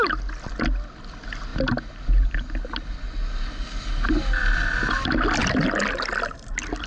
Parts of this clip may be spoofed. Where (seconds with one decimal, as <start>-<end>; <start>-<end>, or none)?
none